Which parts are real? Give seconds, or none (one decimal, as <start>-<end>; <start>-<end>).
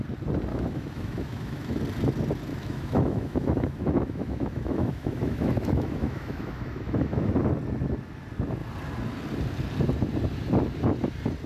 0.0-0.5; 1.8-2.5; 7.3-11.5